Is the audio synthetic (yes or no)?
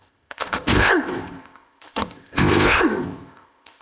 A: yes